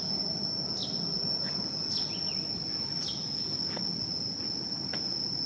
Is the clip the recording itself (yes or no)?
yes